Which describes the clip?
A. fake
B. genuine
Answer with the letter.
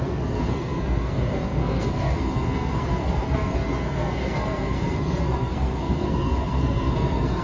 A